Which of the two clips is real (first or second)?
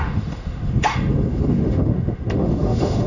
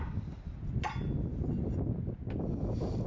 second